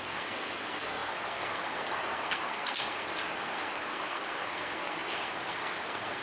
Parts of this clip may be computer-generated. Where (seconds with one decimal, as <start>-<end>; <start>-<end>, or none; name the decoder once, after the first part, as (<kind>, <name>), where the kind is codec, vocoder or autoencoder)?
0.0-6.2 (codec, SNAC)